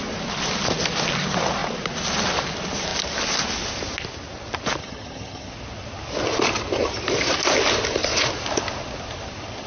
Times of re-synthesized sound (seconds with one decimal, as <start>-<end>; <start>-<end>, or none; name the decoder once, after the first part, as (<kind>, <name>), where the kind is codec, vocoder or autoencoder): 4.8-5.5 (vocoder, HiFi-GAN)